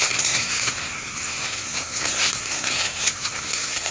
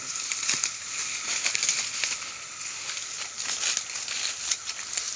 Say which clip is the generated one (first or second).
first